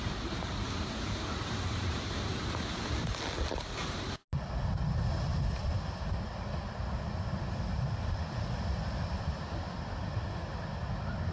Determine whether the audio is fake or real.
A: real